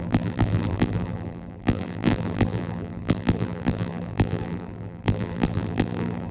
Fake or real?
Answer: fake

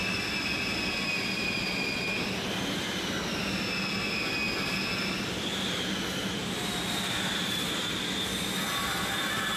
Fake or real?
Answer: real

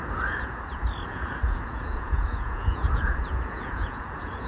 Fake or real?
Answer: fake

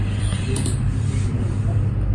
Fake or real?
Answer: fake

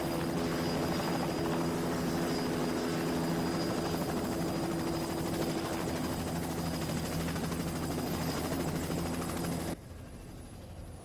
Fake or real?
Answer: real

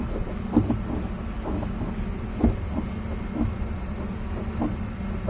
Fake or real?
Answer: real